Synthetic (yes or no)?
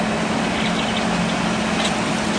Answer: no